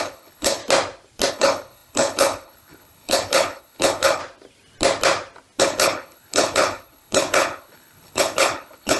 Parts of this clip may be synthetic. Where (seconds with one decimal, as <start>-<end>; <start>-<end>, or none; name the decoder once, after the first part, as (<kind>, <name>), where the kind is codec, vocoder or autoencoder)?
0.0-0.6 (codec, HILCodec); 1.3-4.2; 5.6-9.0